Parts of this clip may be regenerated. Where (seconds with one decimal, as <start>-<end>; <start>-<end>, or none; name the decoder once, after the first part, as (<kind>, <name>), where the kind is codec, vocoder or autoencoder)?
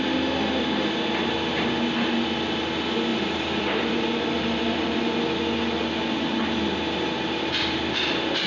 3.1-5.0 (vocoder, BigVGAN v2)